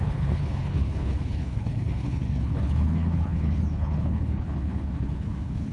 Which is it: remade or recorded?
remade